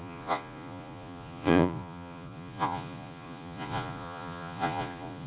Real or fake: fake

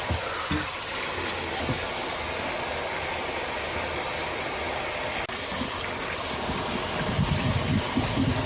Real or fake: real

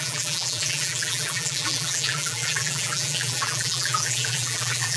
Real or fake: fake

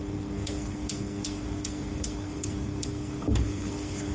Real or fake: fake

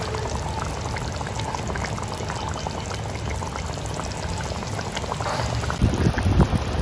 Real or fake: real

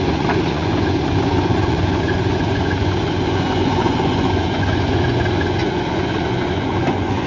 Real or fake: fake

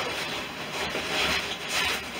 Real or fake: fake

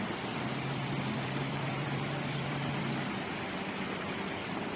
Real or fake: fake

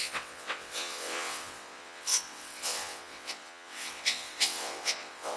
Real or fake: fake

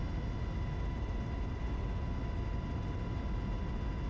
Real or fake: real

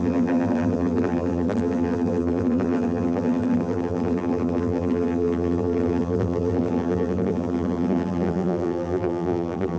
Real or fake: fake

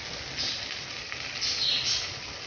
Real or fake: real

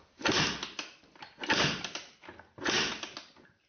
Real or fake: real